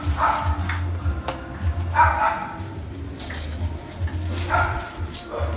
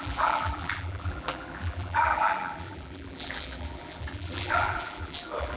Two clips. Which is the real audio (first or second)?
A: first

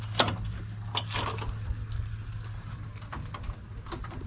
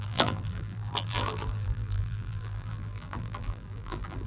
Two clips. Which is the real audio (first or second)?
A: first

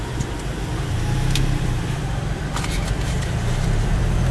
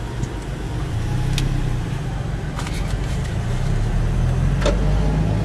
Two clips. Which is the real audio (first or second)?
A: second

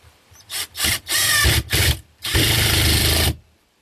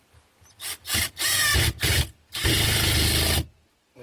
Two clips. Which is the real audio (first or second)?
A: second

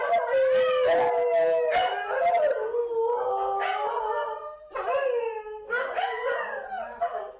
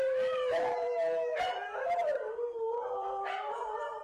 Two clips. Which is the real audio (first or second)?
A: first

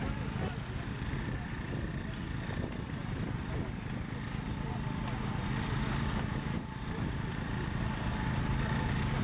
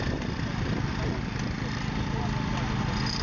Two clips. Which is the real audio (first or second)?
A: second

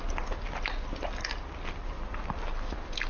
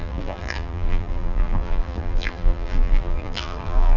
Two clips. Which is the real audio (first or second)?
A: first